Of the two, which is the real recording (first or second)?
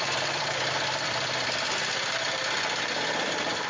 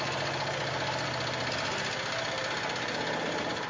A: second